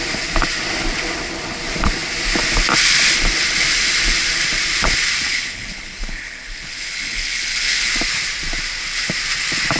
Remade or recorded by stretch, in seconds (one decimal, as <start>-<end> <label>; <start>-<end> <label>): 0.0-5.3 recorded; 5.3-7.9 remade; 7.9-9.8 recorded